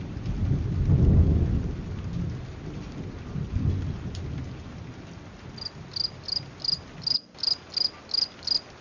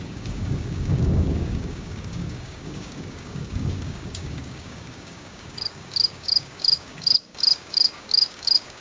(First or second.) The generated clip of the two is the second